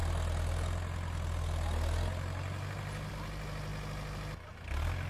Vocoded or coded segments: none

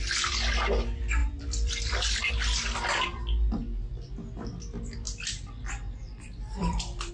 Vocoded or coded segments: 1.2-2.3 (vocoder, BigVGAN v2); 6.0-7.1